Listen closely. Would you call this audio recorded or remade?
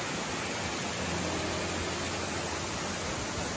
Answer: recorded